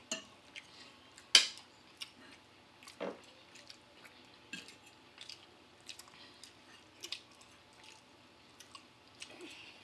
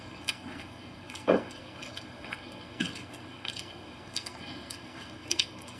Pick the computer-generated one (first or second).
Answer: second